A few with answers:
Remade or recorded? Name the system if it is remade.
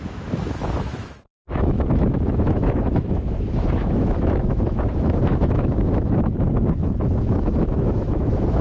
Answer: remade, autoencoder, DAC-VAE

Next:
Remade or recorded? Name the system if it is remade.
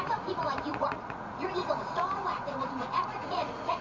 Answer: remade, vocoder, Vocos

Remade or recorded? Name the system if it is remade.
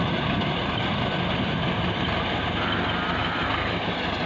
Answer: recorded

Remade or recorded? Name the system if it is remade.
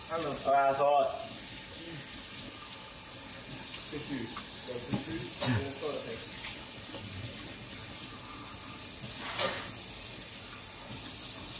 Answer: recorded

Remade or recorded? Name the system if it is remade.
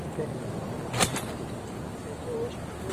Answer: recorded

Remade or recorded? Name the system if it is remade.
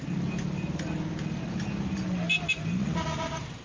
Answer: recorded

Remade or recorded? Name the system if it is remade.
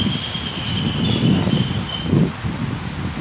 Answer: recorded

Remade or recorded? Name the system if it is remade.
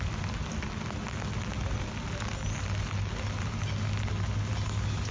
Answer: recorded